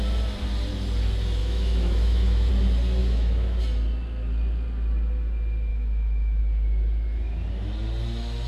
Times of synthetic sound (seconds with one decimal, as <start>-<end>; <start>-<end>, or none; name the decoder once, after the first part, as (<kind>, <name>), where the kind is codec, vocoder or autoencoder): 1.4-2.5 (autoencoder, DAC-VAE); 3.0-3.6; 5.7-6.4